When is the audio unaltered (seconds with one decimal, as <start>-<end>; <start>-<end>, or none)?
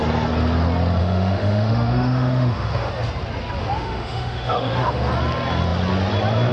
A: 0.0-1.0; 2.9-3.6; 5.1-6.5